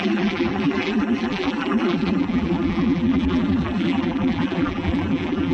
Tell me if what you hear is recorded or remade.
remade